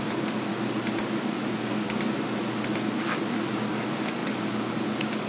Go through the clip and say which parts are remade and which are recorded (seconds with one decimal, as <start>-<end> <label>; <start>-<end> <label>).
0.0-0.5 remade; 0.5-3.7 recorded; 3.7-5.3 remade

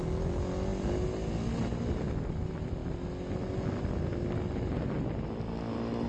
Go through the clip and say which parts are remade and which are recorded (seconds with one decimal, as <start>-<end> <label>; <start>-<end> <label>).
0.0-6.1 recorded